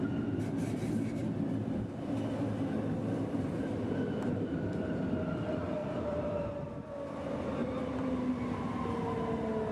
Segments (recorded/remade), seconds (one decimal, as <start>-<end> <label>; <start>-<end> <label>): 0.0-1.2 recorded; 1.2-1.9 remade; 1.9-3.0 recorded; 3.0-4.9 remade; 4.9-5.8 recorded; 5.8-6.5 remade; 6.5-7.6 recorded; 7.6-8.3 remade; 8.3-9.7 recorded